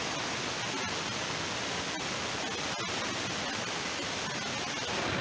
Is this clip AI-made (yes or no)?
no